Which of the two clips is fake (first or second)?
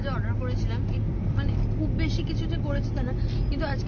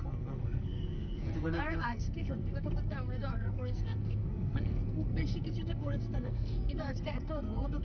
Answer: second